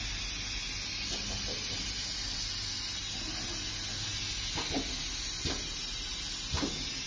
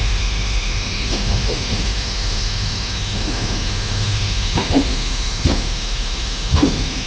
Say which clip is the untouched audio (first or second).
first